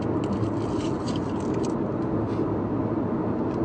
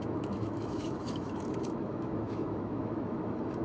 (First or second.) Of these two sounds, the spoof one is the second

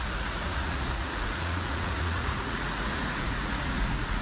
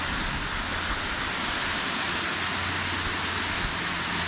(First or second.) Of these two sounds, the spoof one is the first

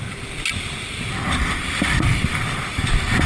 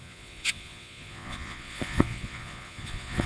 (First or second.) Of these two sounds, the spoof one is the second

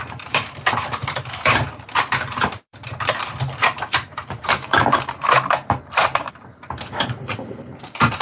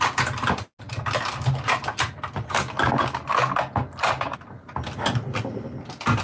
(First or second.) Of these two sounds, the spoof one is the first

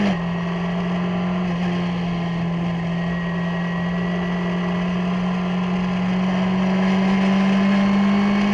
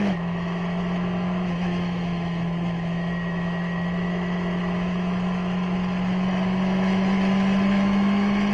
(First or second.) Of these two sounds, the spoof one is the second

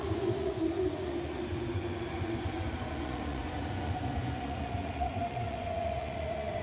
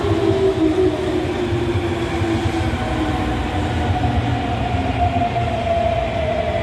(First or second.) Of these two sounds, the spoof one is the first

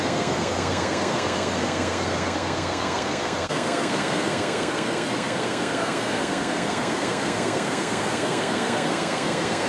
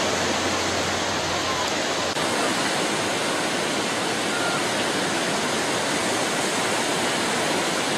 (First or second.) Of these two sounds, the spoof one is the first